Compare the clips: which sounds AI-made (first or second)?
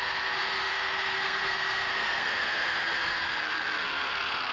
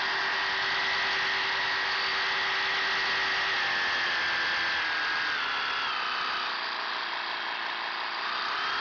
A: first